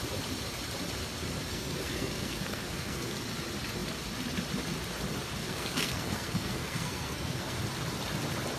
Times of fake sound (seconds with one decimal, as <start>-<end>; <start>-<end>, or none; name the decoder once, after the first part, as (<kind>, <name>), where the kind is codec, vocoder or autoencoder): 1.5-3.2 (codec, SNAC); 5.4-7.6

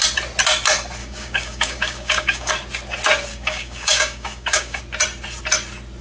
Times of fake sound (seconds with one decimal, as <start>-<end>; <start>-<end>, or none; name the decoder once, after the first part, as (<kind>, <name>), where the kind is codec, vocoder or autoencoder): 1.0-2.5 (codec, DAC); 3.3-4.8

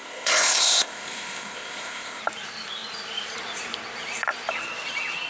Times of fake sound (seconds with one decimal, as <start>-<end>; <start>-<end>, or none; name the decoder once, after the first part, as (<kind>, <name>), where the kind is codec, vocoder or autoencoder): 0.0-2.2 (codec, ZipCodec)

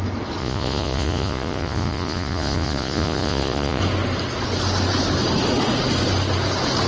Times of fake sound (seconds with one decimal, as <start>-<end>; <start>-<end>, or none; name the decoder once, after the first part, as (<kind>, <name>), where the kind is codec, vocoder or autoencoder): 0.4-3.8 (vocoder, Vocos)

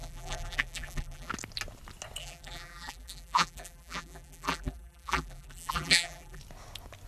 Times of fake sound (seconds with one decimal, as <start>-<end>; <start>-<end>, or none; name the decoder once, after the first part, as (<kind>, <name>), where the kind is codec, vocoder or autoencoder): 0.0-1.3 (vocoder, BigVGAN v2); 2.2-6.4

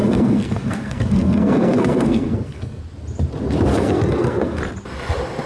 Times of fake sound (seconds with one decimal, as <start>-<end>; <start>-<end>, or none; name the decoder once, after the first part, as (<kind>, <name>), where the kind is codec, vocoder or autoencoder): 0.0-2.8 (codec, SNAC); 3.7-4.6